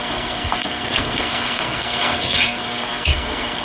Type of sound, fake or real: fake